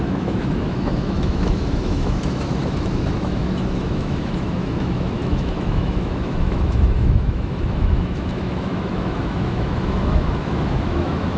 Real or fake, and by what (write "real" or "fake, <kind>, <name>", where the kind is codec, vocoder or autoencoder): fake, autoencoder, DAC-VAE